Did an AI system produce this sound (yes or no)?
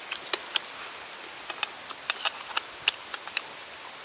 no